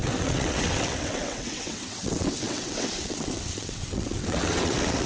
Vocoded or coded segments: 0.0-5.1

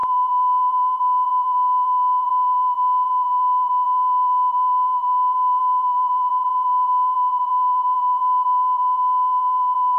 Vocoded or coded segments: 0.0-10.0

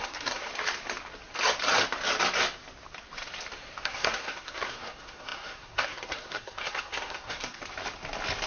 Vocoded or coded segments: 0.0-0.5; 3.8-7.6